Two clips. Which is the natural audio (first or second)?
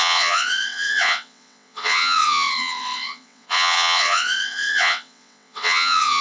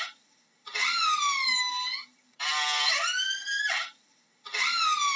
second